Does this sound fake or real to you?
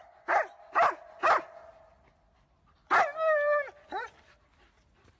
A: real